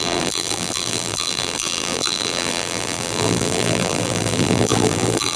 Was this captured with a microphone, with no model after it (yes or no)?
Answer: no